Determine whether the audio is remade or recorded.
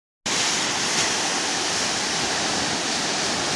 recorded